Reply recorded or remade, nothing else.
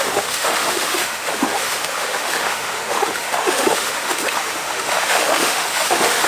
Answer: remade